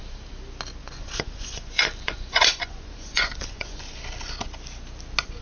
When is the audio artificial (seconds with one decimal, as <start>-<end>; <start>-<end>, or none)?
0.8-4.0